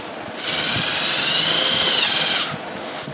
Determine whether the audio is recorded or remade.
recorded